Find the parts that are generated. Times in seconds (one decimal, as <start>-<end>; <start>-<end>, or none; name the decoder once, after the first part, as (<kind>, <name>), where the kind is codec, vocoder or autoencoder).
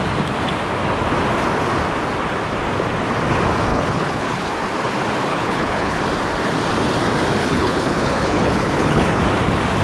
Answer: 3.7-4.5 (codec, HILCodec); 5.3-6.0; 7.4-9.2